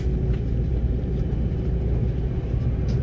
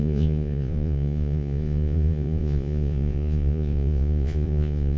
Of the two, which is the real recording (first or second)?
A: first